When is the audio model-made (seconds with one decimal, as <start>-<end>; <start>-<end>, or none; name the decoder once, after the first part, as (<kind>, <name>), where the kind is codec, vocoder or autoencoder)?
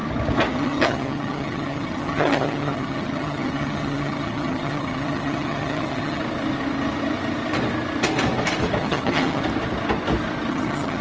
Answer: 0.5-6.2 (vocoder, HiFi-GAN); 8.8-9.4; 10.5-11.0